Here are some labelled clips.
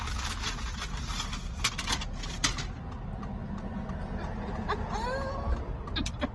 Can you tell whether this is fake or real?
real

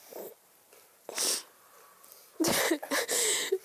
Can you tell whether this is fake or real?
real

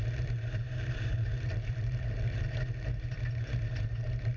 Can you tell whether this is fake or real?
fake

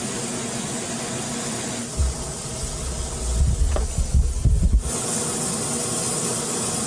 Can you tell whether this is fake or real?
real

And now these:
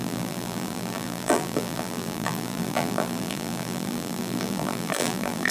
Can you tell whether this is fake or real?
fake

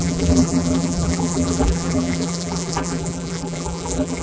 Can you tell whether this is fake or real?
fake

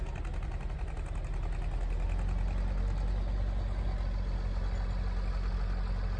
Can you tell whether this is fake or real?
real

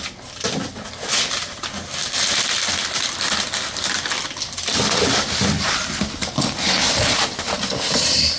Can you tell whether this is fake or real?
real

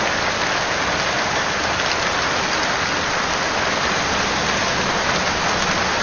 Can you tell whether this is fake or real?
real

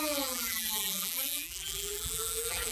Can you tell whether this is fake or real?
fake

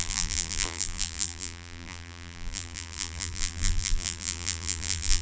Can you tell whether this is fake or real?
fake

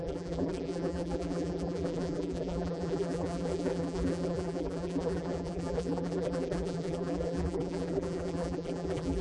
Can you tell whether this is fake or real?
fake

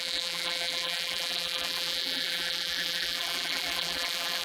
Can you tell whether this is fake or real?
fake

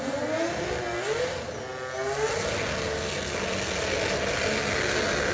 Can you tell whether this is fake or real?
real